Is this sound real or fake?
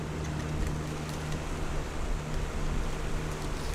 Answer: real